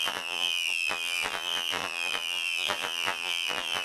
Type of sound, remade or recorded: remade